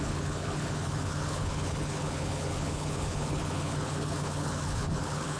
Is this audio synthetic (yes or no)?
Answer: yes